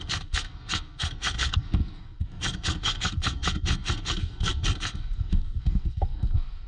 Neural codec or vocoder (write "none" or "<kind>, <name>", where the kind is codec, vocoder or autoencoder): codec, SNAC